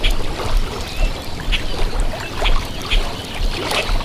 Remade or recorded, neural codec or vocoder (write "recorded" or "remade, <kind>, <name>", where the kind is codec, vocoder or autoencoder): recorded